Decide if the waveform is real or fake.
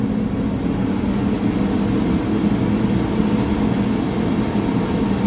real